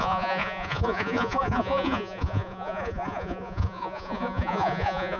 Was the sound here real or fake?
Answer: fake